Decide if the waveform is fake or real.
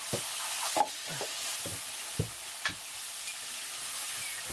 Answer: real